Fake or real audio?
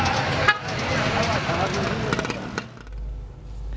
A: real